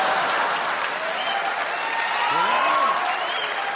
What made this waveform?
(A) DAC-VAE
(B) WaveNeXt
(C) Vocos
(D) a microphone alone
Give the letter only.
D